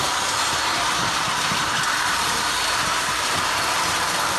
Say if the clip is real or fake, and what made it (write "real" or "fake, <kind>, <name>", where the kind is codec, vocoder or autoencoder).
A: fake, vocoder, BigVGAN v2